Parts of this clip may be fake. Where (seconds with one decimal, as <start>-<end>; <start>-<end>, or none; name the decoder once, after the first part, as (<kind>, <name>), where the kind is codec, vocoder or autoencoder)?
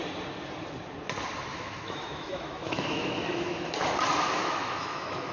1.5-3.7 (autoencoder, DAC-VAE); 4.4-5.3